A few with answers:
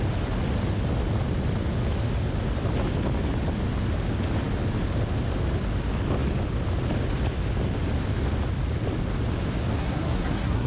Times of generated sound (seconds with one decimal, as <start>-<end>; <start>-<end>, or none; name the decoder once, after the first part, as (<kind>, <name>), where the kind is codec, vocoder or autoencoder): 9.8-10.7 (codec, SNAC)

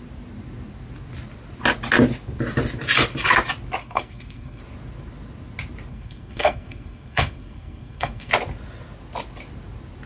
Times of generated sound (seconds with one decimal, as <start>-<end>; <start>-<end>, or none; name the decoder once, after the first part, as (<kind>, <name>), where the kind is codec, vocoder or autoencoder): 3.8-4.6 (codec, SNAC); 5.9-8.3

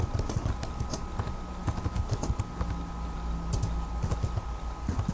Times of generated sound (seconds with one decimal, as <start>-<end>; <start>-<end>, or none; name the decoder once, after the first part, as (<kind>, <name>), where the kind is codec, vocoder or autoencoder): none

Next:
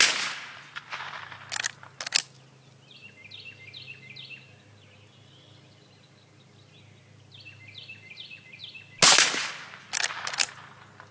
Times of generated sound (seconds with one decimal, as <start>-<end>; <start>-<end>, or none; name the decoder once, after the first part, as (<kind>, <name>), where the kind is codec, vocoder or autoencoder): none

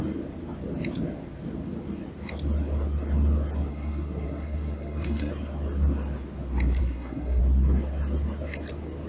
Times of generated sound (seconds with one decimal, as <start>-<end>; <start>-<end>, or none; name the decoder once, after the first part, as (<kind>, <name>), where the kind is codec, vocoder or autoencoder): 3.7-5.3 (codec, SNAC); 6.8-7.4

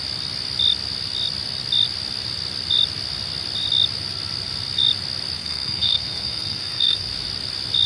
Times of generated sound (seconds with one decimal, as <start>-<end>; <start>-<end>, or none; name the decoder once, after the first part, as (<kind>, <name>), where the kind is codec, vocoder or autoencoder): 5.4-7.1 (codec, SNAC)